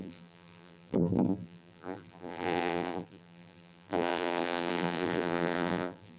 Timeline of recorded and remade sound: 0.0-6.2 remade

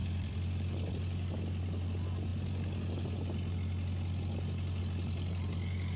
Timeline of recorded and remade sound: 0.0-1.0 remade; 1.0-6.0 recorded